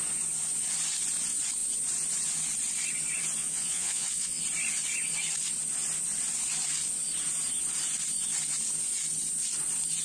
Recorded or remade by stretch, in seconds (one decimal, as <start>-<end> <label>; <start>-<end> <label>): 0.0-3.4 recorded; 3.4-4.4 remade; 4.4-10.0 recorded